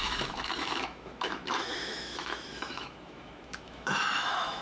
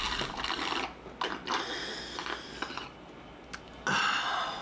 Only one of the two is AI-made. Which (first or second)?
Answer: first